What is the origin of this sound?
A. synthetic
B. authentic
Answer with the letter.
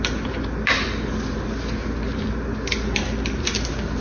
B